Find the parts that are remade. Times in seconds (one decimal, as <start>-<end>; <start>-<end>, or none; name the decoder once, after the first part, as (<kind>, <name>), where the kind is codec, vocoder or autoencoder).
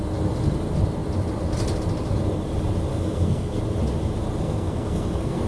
2.9-3.6 (codec, SNAC); 4.4-5.5